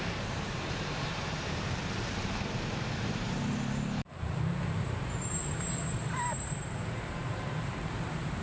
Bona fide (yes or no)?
no